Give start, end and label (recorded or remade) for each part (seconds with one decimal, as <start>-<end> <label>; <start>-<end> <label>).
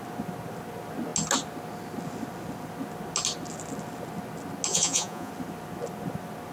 0.0-4.7 recorded; 4.7-5.3 remade; 5.3-6.5 recorded